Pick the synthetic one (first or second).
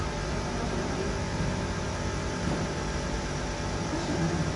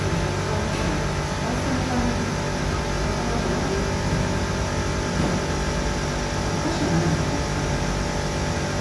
first